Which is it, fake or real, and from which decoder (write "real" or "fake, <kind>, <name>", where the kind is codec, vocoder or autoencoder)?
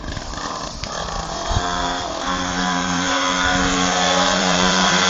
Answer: fake, vocoder, BigVGAN v2